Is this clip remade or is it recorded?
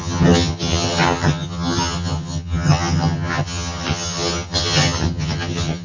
remade